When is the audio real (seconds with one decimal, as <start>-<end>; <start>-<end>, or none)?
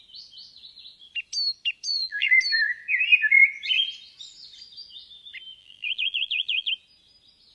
0.0-1.9; 2.4-5.6; 6.7-7.5